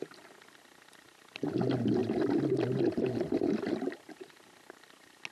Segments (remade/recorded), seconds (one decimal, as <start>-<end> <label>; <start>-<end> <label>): 0.0-5.3 recorded